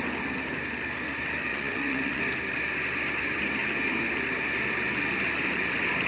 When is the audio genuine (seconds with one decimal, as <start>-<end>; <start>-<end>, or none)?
0.0-1.5; 2.2-6.1